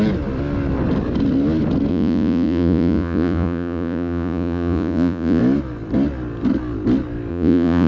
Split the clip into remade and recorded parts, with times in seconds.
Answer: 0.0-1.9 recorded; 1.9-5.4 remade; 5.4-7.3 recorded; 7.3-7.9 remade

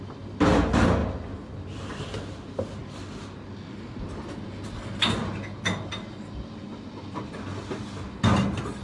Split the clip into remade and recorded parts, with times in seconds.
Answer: 0.0-8.8 recorded

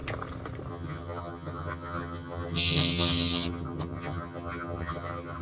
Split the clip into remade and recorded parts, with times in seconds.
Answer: 0.0-0.7 recorded; 0.7-5.4 remade